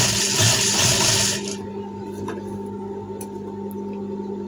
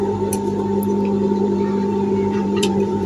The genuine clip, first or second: first